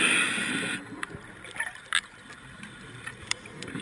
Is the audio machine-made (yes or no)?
no